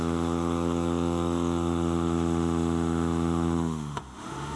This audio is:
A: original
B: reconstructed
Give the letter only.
B